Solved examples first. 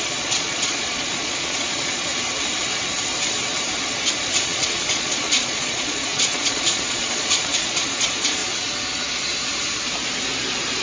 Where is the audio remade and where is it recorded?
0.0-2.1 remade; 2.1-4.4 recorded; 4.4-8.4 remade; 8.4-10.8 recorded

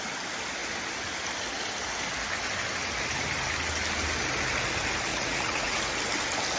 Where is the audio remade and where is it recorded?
0.0-5.1 recorded; 5.1-5.8 remade; 5.8-6.6 recorded

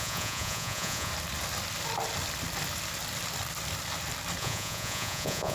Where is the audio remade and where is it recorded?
0.0-1.1 remade; 1.1-4.4 recorded; 4.4-5.5 remade

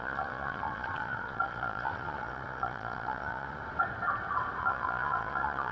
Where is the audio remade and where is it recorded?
0.0-3.6 remade; 3.6-4.6 recorded; 4.6-5.7 remade

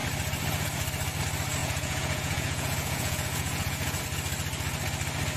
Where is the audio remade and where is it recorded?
0.0-1.6 recorded; 1.6-4.0 remade; 4.0-5.4 recorded

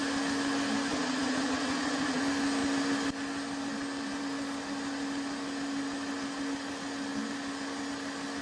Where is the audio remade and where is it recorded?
0.0-0.9 recorded; 0.9-2.2 remade; 2.2-8.4 recorded